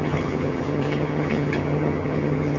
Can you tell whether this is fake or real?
fake